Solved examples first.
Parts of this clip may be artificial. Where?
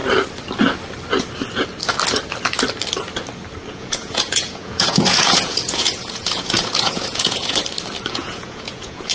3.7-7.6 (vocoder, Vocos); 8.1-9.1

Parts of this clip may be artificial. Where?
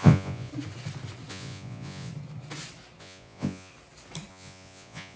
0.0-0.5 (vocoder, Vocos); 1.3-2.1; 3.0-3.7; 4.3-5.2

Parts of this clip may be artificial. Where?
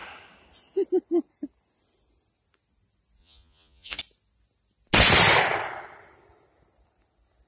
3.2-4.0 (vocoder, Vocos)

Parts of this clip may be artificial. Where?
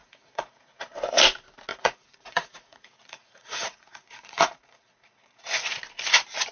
0.0-1.2 (vocoder, Vocos); 1.7-5.6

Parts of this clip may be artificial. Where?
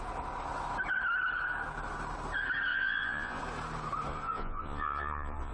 2.7-3.4 (vocoder, Vocos); 4.1-5.5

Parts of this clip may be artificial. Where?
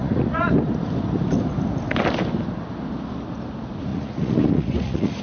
0.0-0.5 (vocoder, Vocos); 3.9-5.2